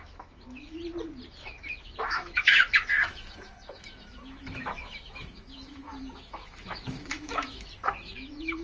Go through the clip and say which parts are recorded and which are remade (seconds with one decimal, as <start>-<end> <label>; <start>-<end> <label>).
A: 0.0-0.8 remade; 0.8-1.3 recorded; 1.3-8.6 remade